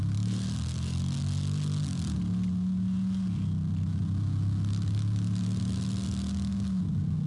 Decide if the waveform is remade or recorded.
recorded